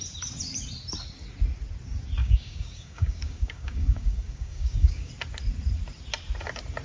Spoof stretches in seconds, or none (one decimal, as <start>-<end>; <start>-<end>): 2.2-5.1